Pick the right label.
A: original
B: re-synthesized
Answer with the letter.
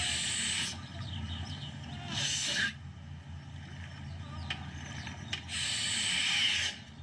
A